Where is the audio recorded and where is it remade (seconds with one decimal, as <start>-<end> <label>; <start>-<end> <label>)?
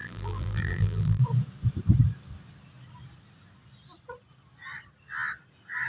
0.0-1.2 remade; 1.2-5.9 recorded